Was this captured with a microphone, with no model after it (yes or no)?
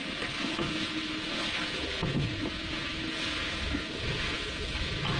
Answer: yes